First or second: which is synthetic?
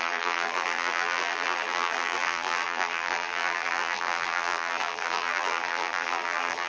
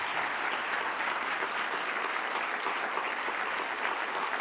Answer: first